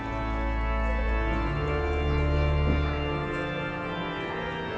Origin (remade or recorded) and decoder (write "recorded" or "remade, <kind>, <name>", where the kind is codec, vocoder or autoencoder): recorded